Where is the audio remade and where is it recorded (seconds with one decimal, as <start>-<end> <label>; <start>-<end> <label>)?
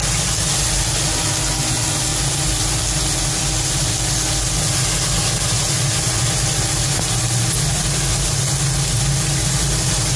0.0-10.2 recorded